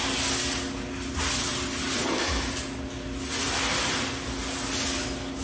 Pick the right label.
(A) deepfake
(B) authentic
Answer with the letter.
B